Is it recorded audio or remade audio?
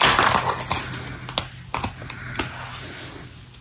recorded